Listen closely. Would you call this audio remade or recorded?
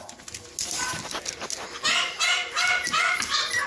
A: recorded